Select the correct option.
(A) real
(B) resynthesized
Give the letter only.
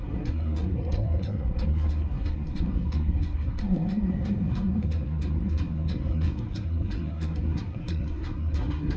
B